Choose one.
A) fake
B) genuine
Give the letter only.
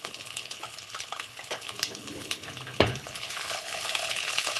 A